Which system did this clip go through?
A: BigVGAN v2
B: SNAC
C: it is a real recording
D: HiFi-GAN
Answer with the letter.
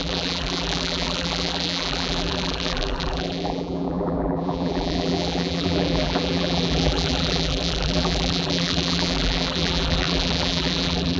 A